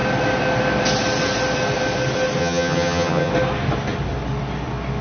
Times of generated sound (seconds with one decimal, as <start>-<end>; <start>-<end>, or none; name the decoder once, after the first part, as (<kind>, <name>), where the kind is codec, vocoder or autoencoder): 2.4-3.3 (vocoder, HiFi-GAN)

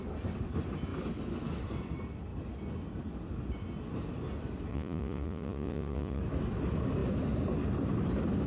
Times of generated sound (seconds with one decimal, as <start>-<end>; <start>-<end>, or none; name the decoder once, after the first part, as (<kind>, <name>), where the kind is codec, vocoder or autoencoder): 4.7-6.2 (vocoder, Vocos)